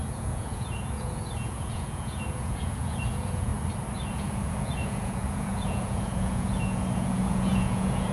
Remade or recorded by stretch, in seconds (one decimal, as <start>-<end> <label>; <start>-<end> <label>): 0.0-3.5 remade; 3.5-4.1 recorded; 4.1-8.1 remade